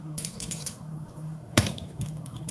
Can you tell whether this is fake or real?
fake